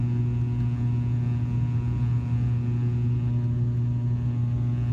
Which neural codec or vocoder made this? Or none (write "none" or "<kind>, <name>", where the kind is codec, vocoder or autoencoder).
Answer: none